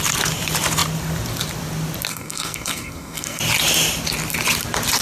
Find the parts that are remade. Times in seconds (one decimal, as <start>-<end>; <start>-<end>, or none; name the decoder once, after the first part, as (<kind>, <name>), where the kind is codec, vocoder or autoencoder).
2.1-3.4 (codec, SNAC)